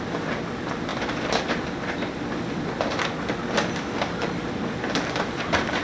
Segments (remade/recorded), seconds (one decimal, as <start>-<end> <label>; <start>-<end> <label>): 0.0-5.8 recorded